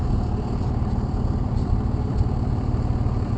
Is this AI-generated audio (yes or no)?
yes